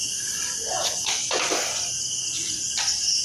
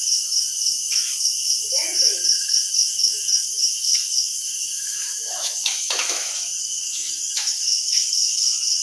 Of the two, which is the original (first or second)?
first